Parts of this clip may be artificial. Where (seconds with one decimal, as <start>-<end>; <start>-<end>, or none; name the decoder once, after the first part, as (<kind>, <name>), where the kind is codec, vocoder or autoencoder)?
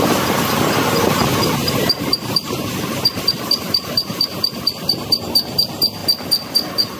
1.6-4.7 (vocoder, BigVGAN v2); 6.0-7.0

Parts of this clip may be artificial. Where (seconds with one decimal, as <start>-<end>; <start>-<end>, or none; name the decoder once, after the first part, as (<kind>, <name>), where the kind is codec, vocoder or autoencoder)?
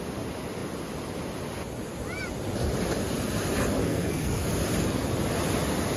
3.8-4.5 (codec, SNAC)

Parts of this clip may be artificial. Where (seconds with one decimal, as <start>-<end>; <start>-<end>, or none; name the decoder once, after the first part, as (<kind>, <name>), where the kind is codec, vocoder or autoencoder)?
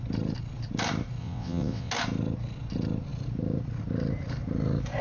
1.2-1.9 (vocoder, WaveNeXt)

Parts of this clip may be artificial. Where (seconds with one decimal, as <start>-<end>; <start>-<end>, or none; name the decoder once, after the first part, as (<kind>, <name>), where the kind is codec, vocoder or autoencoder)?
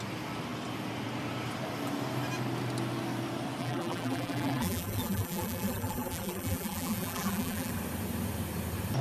3.6-7.7 (vocoder, BigVGAN v2)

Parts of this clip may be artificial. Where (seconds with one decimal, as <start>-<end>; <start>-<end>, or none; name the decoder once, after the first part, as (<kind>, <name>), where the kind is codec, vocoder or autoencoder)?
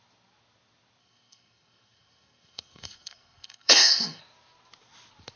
1.0-4.2 (codec, SNAC)